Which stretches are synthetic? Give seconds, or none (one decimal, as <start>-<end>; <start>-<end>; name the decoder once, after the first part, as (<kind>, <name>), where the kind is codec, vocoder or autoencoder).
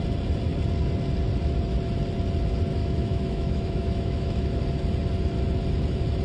2.8-4.6 (autoencoder, DAC-VAE)